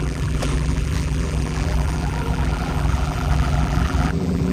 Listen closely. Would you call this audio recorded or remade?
remade